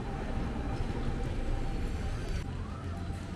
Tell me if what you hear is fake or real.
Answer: real